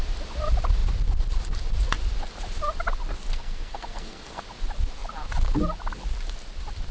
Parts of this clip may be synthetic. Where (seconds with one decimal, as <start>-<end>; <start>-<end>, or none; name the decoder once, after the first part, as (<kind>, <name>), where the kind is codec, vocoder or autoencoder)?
3.3-4.4 (codec, SNAC)